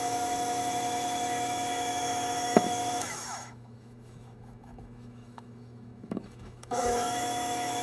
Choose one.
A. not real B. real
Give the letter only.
A